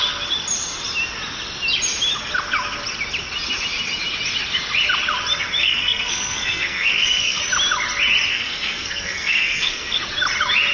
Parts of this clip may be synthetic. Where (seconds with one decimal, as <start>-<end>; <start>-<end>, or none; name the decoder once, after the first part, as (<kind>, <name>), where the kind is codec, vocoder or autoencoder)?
5.6-7.4 (codec, SNAC); 8.3-10.0